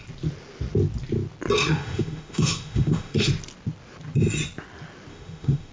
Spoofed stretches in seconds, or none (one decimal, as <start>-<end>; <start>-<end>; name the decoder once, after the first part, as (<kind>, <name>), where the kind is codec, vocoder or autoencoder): 1.6-3.3 (autoencoder, DAC-VAE); 5.1-5.7

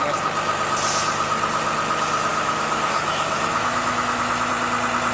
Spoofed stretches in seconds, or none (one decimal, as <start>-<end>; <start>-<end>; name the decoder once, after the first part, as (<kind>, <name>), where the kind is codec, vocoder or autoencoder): 2.3-4.5 (autoencoder, DAC-VAE)

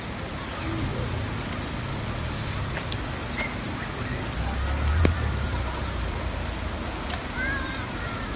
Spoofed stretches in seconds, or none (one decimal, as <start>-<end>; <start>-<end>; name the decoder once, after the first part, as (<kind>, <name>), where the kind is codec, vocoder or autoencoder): 0.0-0.9 (vocoder, BigVGAN v2); 3.1-4.1; 4.9-8.4

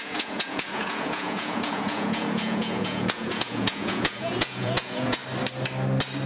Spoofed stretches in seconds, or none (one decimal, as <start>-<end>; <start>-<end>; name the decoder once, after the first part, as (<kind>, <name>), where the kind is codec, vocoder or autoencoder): 0.0-5.2 (vocoder, Vocos)

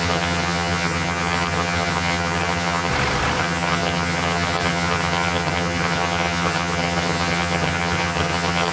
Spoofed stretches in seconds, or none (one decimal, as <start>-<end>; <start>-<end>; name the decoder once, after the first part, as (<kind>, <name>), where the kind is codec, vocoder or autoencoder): 0.0-2.9 (vocoder, HiFi-GAN); 3.4-8.7

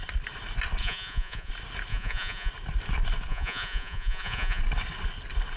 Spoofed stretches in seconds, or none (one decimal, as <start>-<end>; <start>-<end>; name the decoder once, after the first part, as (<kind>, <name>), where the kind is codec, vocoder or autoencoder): 0.8-1.5 (vocoder, Vocos); 1.9-2.5; 3.3-4.6

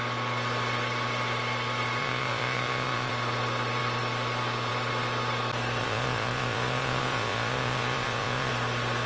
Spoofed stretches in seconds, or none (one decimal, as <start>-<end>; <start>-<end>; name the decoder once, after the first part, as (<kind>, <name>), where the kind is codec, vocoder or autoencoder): 2.0-3.1 (vocoder, Vocos); 5.8-8.5